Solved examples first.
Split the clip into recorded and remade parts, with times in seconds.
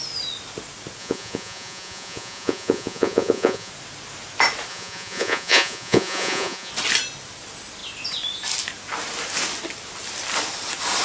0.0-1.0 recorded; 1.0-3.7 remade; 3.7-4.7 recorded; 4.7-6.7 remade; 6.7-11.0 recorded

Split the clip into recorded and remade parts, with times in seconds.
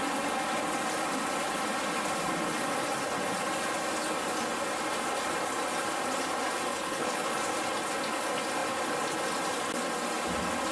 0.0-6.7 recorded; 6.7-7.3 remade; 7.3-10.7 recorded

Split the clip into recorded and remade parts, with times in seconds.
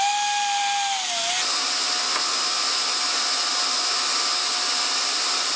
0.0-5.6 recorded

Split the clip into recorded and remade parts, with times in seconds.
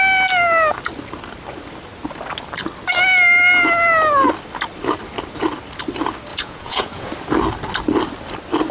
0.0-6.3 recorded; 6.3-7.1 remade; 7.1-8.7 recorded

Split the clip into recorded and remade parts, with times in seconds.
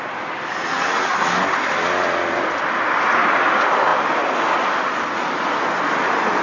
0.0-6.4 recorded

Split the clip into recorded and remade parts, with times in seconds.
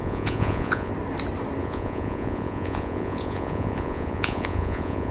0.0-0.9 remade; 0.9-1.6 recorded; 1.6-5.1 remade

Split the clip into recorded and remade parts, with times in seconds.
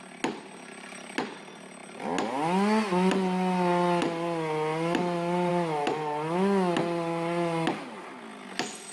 0.0-8.9 recorded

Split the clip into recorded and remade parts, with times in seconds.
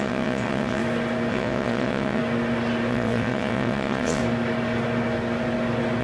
0.0-0.8 remade; 0.8-1.3 recorded; 1.3-2.2 remade; 2.2-2.9 recorded; 2.9-4.2 remade; 4.2-6.0 recorded